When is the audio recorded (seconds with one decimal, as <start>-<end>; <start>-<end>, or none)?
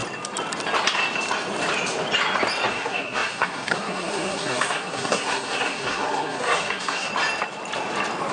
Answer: 0.0-2.7; 7.1-8.3